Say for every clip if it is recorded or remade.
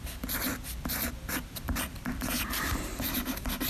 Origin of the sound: remade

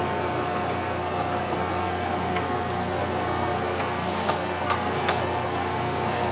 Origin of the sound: remade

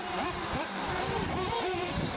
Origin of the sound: remade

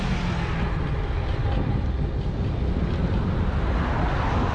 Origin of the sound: recorded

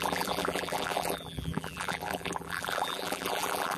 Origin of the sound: remade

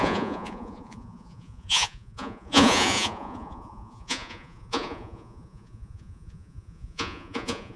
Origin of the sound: remade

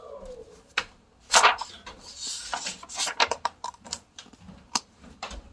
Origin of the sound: recorded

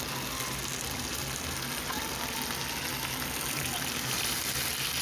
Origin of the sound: recorded